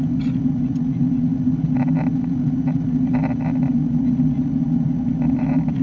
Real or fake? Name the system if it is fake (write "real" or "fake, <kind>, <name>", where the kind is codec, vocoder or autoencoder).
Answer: real